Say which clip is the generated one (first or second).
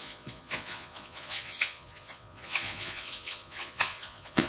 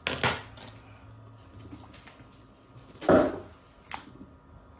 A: first